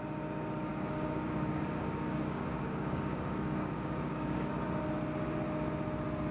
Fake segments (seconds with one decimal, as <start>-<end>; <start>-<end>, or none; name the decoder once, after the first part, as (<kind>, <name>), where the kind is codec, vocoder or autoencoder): 0.7-4.5 (codec, DAC)